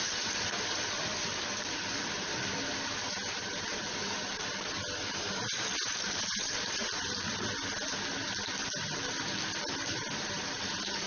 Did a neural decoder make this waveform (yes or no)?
yes